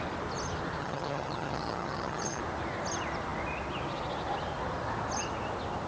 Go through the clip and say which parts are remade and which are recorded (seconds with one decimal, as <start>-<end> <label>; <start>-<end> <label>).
0.0-0.8 recorded; 0.8-2.4 remade; 2.4-5.9 recorded